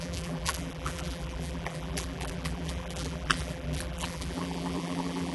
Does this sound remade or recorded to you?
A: remade